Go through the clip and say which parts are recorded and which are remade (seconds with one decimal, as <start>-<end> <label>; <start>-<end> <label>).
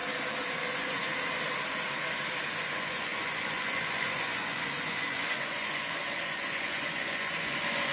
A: 0.0-0.5 recorded; 0.5-1.1 remade; 1.1-2.5 recorded; 2.5-7.9 remade